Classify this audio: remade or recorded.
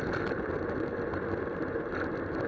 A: recorded